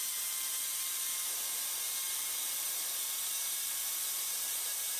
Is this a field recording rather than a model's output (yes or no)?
no